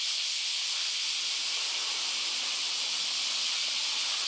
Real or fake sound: real